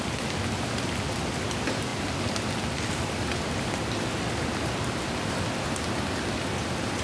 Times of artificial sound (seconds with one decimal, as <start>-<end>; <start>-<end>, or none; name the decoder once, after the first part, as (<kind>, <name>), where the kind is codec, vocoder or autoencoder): none